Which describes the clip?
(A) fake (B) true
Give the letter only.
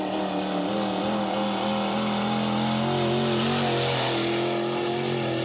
B